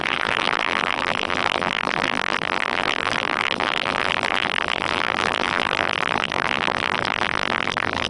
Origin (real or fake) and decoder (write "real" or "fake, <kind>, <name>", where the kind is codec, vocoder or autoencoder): fake, vocoder, BigVGAN v2